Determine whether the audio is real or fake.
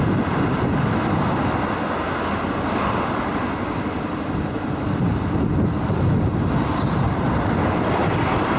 real